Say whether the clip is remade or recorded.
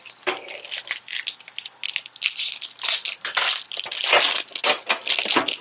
recorded